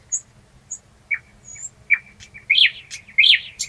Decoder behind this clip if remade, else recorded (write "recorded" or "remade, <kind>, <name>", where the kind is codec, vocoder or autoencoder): recorded